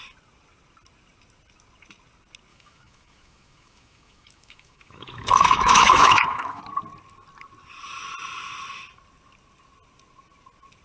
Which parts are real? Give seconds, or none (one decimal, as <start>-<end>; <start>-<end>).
0.0-2.5; 6.6-10.8